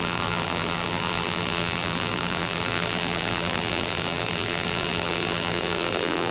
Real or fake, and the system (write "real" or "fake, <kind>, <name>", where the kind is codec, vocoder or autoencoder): fake, vocoder, BigVGAN v2